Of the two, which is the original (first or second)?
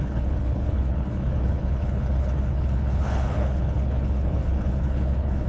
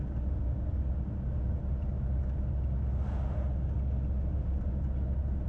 second